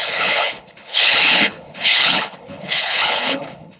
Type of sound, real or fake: fake